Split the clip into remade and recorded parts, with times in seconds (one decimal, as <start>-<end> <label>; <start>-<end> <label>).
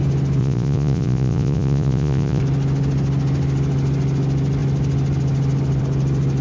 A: 0.0-0.4 recorded; 0.4-2.4 remade; 2.4-6.4 recorded